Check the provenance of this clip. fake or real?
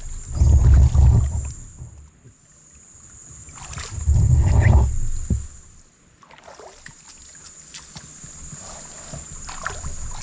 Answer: real